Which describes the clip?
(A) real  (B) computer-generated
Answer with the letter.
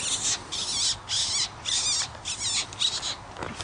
A